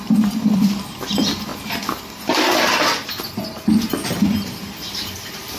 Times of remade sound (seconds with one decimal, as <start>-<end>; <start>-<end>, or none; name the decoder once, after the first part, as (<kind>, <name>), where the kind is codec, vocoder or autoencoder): 0.0-1.5 (vocoder, BigVGAN v2); 4.9-5.6